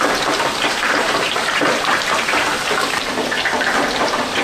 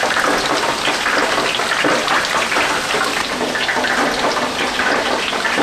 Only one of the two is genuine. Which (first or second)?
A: second